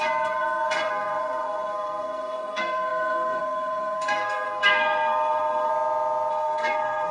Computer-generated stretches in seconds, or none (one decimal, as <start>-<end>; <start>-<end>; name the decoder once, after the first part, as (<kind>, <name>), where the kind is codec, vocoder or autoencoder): 0.0-5.7 (codec, SNAC); 6.3-7.1